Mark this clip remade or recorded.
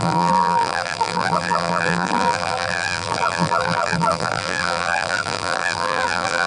remade